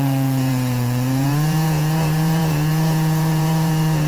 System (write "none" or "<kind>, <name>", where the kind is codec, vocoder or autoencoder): vocoder, Vocos